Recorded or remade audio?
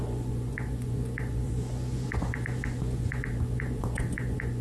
remade